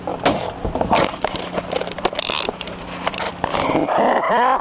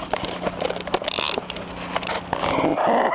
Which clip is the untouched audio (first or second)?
second